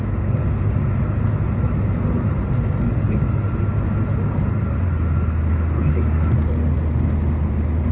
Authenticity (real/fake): real